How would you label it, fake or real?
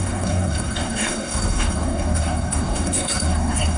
fake